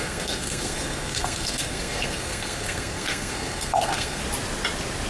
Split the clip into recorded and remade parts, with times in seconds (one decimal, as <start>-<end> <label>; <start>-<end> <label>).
0.0-4.2 remade; 4.2-5.1 recorded